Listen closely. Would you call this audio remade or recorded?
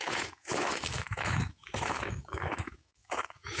remade